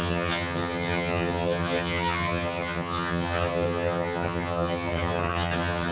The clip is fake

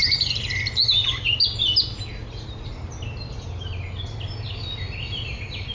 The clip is real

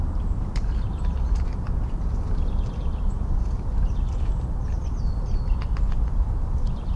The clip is fake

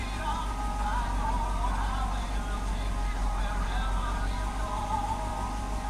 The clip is real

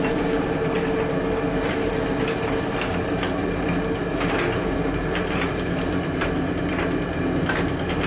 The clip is real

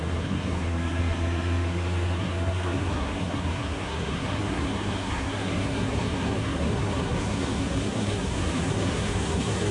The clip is fake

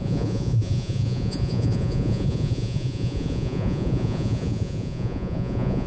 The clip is fake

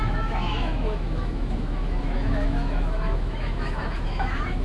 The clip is fake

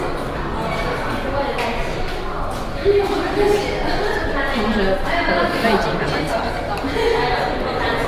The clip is real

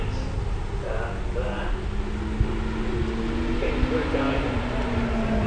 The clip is real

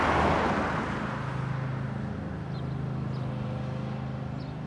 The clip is real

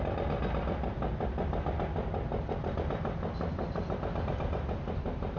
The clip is real